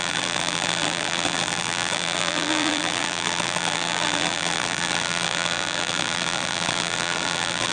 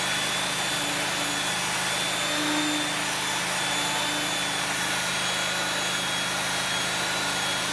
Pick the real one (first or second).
second